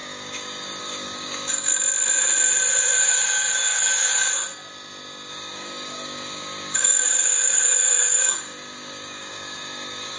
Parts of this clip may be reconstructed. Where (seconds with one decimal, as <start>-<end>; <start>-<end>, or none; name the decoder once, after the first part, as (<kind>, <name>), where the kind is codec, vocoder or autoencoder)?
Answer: 0.0-1.7 (codec, DAC); 3.0-4.4; 5.3-10.2